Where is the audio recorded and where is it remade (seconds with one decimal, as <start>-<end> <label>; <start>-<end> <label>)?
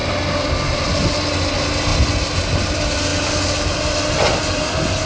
0.0-5.1 recorded